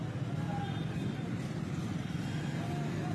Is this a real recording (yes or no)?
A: yes